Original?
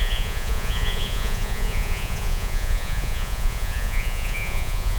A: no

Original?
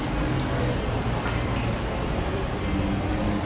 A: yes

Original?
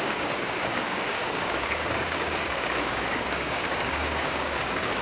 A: no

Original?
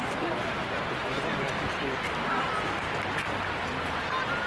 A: yes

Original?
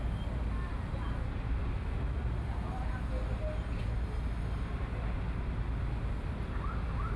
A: yes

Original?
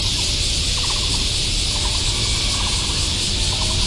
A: yes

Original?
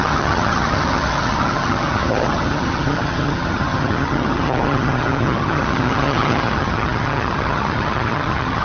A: no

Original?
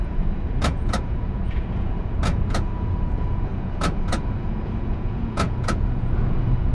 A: no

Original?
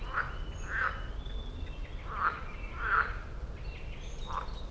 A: yes